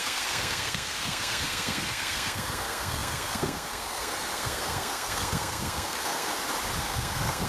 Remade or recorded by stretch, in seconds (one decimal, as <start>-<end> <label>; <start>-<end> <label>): 0.0-6.3 remade; 6.3-6.8 recorded; 6.8-7.5 remade